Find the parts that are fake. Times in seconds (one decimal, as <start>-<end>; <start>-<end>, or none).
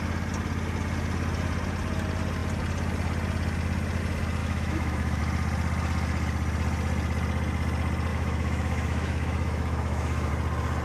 4.4-5.2; 8.1-10.3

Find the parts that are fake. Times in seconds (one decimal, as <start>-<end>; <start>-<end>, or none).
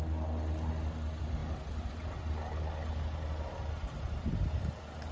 none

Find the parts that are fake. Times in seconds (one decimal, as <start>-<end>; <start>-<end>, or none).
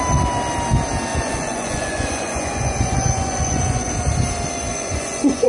1.1-3.9; 4.7-5.5